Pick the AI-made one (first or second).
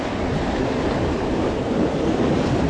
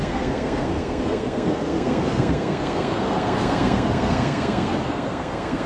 second